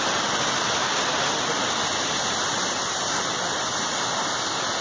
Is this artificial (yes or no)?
no